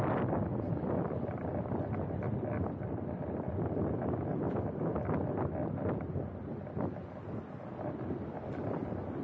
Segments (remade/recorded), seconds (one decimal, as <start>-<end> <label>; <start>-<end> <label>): 0.0-9.2 recorded